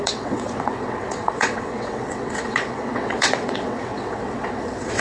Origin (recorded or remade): remade